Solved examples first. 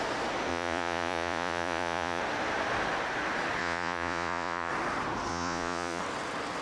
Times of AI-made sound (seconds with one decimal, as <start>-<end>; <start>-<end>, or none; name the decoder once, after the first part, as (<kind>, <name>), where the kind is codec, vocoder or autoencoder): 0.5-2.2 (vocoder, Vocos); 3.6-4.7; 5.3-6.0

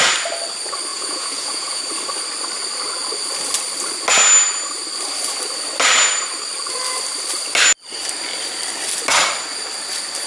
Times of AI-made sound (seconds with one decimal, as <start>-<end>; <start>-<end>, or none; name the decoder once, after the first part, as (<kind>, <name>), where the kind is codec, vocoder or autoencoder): 0.9-1.8 (vocoder, Vocos)

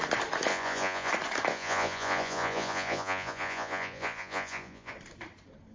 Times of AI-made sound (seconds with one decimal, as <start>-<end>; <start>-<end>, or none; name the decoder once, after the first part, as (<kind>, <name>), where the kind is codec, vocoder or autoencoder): 0.5-1.1 (vocoder, Vocos); 1.5-4.9

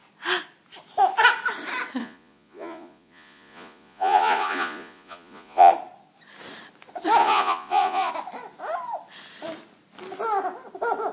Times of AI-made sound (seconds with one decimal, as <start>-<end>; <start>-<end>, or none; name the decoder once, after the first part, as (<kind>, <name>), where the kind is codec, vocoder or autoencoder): 2.0-5.7 (vocoder, Vocos); 7.2-8.1